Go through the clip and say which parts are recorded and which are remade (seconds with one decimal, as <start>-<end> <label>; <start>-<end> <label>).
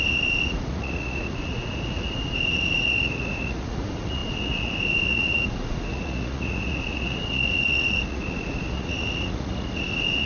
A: 0.0-10.3 remade